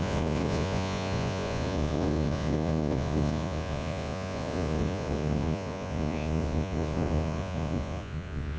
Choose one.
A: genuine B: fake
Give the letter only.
B